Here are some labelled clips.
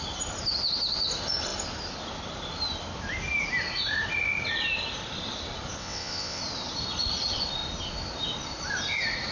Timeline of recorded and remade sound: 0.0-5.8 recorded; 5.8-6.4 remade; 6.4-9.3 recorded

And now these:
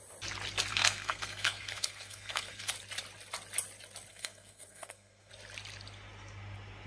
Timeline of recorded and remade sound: 0.0-0.7 recorded; 0.7-2.7 remade; 2.7-4.1 recorded; 4.1-5.3 remade; 5.3-6.9 recorded

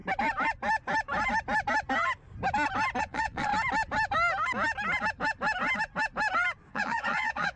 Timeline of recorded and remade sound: 0.0-3.0 recorded; 3.0-3.5 remade; 3.5-6.7 recorded; 6.7-7.6 remade

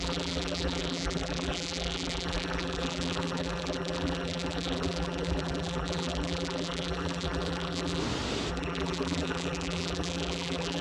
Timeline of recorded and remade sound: 0.0-8.0 remade; 8.0-8.5 recorded; 8.5-10.8 remade